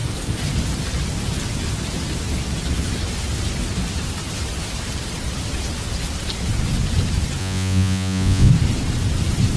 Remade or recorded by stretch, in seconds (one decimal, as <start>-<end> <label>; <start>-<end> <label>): 0.0-7.4 recorded; 7.4-8.5 remade; 8.5-9.6 recorded